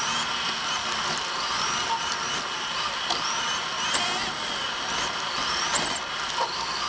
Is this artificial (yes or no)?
no